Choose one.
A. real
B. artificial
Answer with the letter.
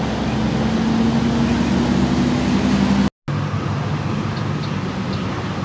A